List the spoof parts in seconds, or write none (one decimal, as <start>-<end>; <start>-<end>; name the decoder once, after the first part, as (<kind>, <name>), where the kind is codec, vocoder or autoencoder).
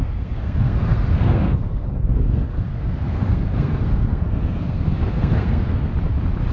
0.0-5.9 (codec, SNAC)